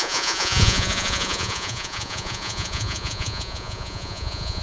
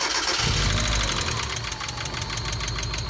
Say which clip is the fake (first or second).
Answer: first